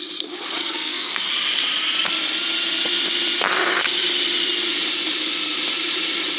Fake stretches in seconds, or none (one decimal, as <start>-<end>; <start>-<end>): 0.6-1.3